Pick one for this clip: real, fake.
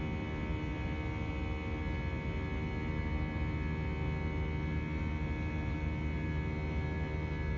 real